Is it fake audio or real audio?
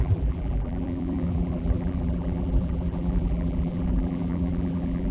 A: fake